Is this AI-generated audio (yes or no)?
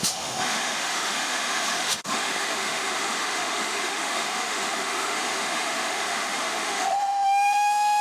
yes